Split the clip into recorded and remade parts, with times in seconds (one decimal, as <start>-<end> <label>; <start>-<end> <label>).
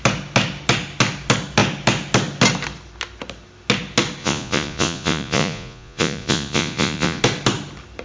0.0-4.2 recorded; 4.2-7.2 remade; 7.2-8.0 recorded